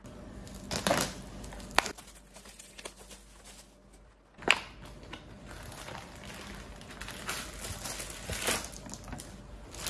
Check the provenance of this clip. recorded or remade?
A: recorded